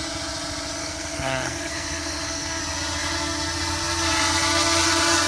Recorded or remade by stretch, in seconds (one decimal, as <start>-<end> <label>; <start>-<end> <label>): 0.0-0.8 recorded; 0.8-2.6 remade; 2.6-5.3 recorded